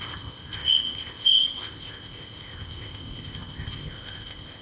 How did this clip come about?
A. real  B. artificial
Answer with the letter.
B